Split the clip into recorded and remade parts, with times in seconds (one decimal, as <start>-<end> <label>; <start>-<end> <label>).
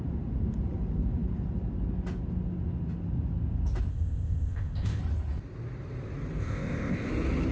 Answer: 0.0-3.9 recorded; 3.9-5.0 remade; 5.0-6.4 recorded; 6.4-7.1 remade; 7.1-7.5 recorded